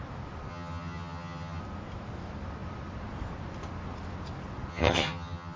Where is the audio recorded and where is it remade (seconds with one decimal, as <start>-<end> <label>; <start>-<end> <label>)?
0.0-0.5 recorded; 0.5-1.6 remade; 1.6-4.7 recorded; 4.7-5.6 remade

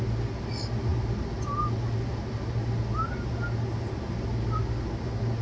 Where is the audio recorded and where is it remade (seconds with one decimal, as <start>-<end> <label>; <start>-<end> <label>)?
0.0-5.4 recorded

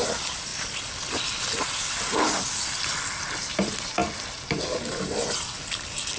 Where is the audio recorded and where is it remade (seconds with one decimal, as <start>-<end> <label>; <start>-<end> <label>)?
0.0-6.2 recorded

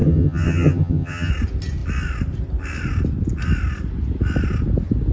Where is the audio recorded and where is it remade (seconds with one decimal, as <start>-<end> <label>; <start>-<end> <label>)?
0.0-1.3 remade; 1.3-5.1 recorded

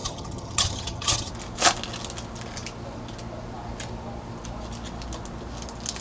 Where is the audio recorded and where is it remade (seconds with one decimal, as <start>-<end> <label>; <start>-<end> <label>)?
0.0-1.3 remade; 1.3-6.0 recorded

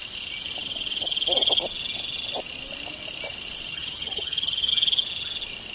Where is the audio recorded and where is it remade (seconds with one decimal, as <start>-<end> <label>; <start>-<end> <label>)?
0.0-3.7 recorded; 3.7-4.7 remade; 4.7-5.7 recorded